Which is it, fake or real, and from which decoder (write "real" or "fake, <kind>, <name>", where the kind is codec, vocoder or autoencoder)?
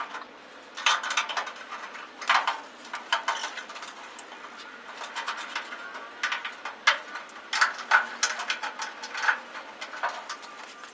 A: real